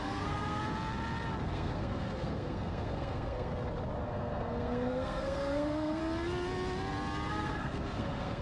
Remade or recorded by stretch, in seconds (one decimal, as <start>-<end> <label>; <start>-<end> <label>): 0.0-0.6 remade; 0.6-1.4 recorded; 1.4-3.5 remade; 3.5-4.0 recorded; 4.0-6.0 remade; 6.0-7.3 recorded; 7.3-8.4 remade